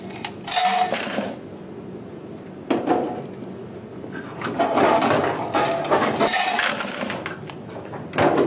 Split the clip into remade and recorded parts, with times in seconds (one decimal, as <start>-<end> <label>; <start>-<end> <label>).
0.0-8.5 recorded